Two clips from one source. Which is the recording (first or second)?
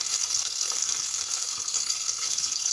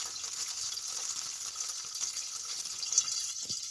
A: second